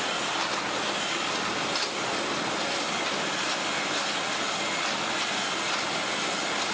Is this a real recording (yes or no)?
yes